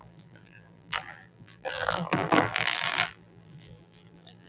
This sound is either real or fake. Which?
fake